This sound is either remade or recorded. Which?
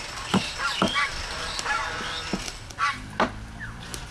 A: remade